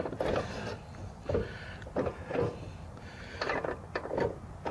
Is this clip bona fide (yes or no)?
yes